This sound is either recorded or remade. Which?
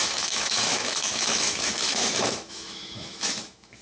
remade